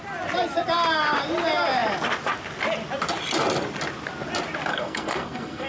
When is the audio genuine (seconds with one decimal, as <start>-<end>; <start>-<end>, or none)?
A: 0.0-4.7